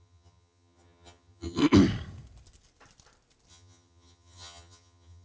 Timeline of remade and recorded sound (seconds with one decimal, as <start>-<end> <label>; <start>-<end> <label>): 0.0-1.6 remade; 1.6-3.5 recorded; 3.5-5.2 remade